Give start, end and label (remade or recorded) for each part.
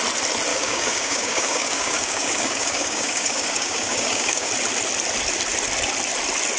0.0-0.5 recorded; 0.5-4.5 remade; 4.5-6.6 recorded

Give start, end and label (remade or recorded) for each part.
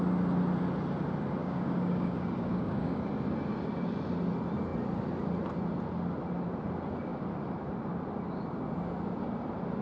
0.0-1.4 recorded; 1.4-3.0 remade; 3.0-9.8 recorded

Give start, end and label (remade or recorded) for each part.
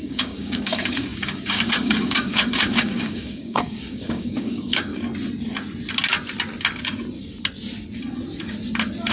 0.0-4.9 remade; 4.9-9.1 recorded